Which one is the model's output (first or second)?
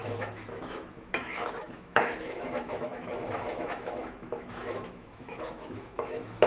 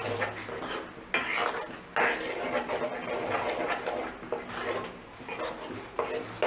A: first